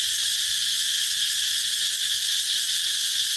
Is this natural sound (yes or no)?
yes